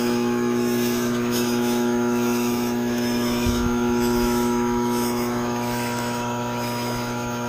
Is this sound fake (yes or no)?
yes